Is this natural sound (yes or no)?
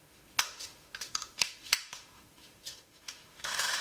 no